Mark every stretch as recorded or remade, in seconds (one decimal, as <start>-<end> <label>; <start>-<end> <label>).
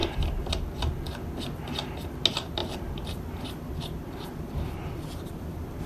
0.0-0.5 remade; 0.5-2.6 recorded; 2.6-5.9 remade